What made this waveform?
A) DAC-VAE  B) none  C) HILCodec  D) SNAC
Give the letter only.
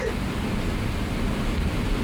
B